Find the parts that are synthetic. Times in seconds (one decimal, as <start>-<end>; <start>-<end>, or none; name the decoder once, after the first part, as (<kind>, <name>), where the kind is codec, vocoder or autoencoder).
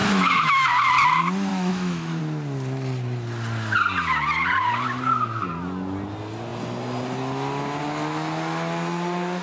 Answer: 0.0-0.7 (autoencoder, DAC-VAE); 1.5-2.2